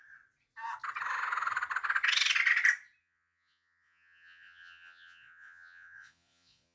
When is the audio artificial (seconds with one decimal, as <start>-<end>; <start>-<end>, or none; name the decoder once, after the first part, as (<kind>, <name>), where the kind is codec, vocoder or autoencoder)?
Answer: 3.0-6.7 (vocoder, Vocos)